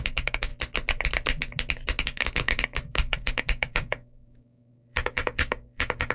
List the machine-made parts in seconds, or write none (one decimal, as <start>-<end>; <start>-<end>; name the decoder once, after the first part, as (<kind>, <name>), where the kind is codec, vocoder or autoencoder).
0.0-0.5 (codec, DAC); 2.0-6.1